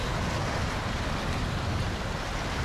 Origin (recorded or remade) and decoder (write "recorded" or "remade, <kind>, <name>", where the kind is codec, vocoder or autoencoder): recorded